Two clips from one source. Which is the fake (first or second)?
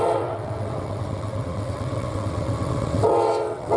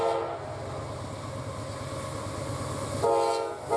first